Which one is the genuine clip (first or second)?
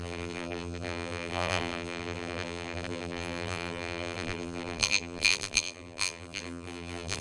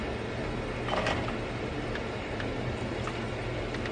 second